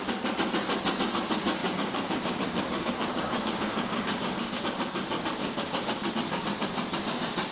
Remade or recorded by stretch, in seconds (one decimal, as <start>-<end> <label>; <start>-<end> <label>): 0.0-1.6 recorded; 1.6-4.6 remade; 4.6-5.4 recorded; 5.4-6.1 remade; 6.1-7.5 recorded